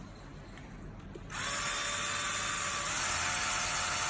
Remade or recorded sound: recorded